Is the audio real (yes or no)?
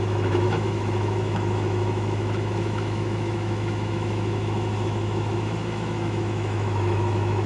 no